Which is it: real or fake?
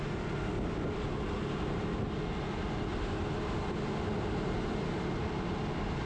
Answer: real